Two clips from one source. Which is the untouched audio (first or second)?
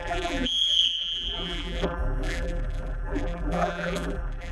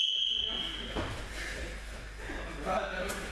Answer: second